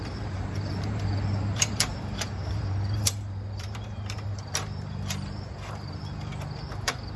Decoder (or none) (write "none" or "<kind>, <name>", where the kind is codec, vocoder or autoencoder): vocoder, BigVGAN v2